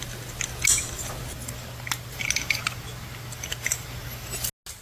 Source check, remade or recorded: recorded